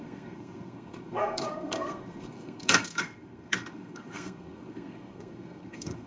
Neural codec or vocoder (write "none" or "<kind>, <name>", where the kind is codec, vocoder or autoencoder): codec, SNAC